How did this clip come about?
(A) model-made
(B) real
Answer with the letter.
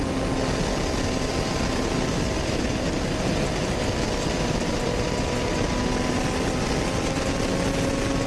B